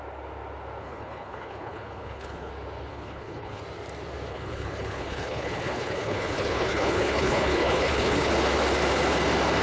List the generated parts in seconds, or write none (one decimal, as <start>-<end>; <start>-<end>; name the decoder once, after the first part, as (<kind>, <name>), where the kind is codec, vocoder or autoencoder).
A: 0.8-2.5 (codec, HILCodec); 2.9-3.6; 4.3-8.3